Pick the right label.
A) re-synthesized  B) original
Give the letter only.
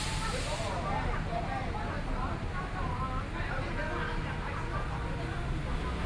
B